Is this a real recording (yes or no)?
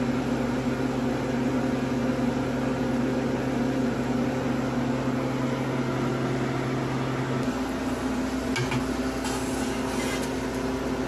yes